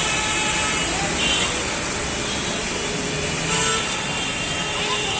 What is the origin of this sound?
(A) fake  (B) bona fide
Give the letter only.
B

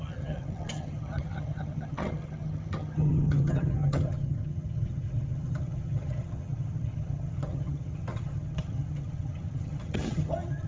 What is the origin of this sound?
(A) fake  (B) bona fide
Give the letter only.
A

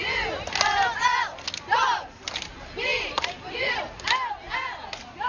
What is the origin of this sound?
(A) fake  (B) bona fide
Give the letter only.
B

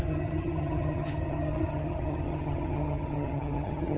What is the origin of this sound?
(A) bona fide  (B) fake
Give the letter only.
B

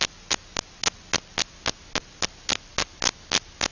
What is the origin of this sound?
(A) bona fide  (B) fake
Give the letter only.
A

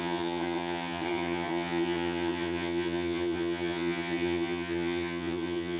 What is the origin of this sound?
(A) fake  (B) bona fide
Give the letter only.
A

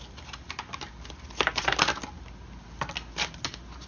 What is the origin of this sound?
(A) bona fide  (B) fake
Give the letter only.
A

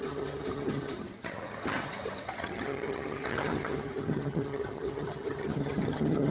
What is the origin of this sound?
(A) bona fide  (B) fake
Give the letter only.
B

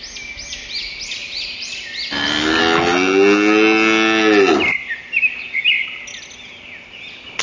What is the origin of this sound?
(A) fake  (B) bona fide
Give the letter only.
B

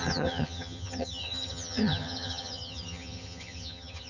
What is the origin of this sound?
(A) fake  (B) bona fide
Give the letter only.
A